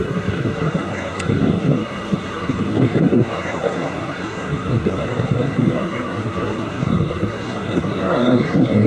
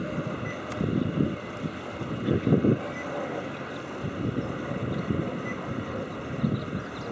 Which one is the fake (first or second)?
first